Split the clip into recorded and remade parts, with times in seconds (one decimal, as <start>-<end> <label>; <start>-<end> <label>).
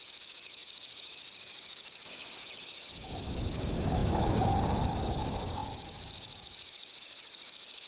0.0-7.9 remade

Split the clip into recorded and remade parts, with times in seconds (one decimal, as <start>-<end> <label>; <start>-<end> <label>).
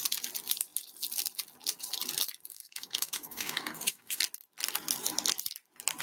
0.0-2.5 recorded; 2.5-4.2 remade; 4.2-6.0 recorded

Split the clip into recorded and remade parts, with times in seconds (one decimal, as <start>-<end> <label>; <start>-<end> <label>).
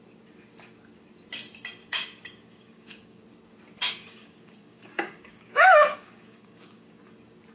0.0-1.8 recorded; 1.8-3.2 remade; 3.2-3.8 recorded; 3.8-7.0 remade; 7.0-7.5 recorded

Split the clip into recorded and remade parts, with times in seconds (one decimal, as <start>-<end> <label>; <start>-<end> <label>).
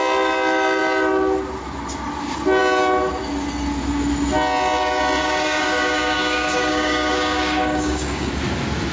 0.0-5.2 recorded; 5.2-8.3 remade; 8.3-8.9 recorded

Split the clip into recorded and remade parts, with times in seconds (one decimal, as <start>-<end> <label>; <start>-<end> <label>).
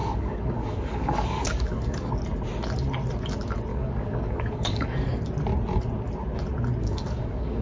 0.0-2.1 remade; 2.1-3.7 recorded; 3.7-5.2 remade; 5.2-6.8 recorded; 6.8-7.6 remade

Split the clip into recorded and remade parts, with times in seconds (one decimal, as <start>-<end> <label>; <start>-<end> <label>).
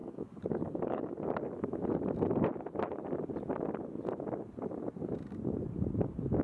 0.0-1.1 remade; 1.1-6.4 recorded